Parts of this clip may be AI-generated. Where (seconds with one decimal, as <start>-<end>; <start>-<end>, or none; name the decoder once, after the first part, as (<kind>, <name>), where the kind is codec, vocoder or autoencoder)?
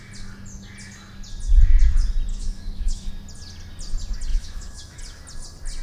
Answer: 2.3-3.1 (autoencoder, DAC-VAE); 4.3-5.0